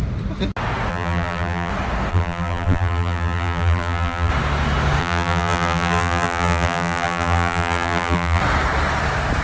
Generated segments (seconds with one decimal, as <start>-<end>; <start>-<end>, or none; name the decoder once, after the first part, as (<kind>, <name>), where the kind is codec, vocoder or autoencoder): 0.9-1.7 (vocoder, BigVGAN v2); 2.1-4.3; 5.0-8.4